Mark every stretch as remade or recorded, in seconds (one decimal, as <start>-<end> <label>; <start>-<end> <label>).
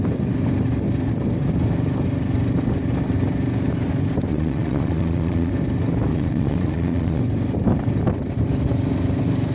0.0-4.3 recorded; 4.3-5.5 remade; 5.5-6.1 recorded; 6.1-7.2 remade; 7.2-9.5 recorded